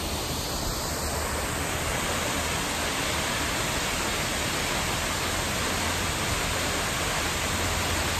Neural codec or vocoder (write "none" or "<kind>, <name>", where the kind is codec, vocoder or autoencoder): none